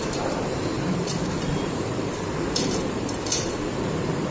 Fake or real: fake